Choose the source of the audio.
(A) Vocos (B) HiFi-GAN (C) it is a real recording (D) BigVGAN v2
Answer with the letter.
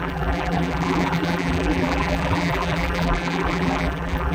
D